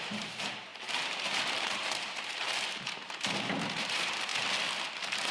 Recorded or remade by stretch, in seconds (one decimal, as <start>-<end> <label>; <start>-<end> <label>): 0.0-4.3 remade; 4.3-5.3 recorded